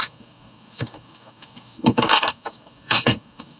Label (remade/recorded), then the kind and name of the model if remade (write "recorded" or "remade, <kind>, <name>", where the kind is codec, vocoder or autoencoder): remade, codec, DAC